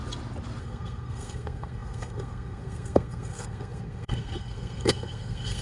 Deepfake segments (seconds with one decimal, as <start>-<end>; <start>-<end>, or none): 0.6-5.6